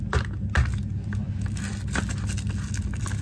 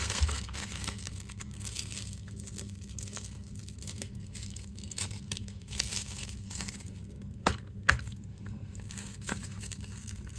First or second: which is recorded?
first